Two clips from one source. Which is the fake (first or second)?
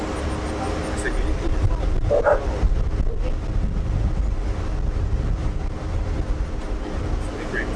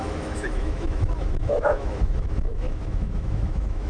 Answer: second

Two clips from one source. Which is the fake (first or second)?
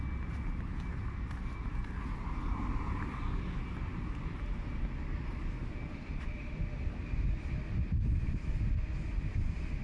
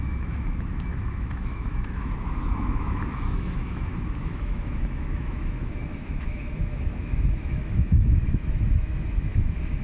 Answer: second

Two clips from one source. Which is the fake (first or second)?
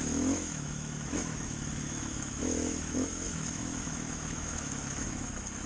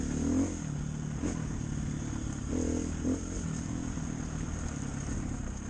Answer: first